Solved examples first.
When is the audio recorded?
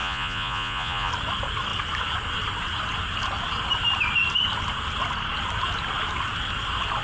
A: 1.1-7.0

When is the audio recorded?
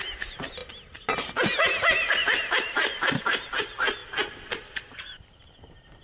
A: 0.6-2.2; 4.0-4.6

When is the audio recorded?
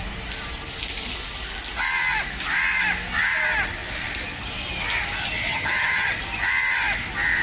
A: 0.0-5.5; 6.1-7.4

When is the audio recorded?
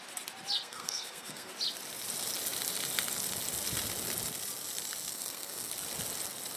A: 0.0-0.6; 1.5-5.1; 5.7-6.6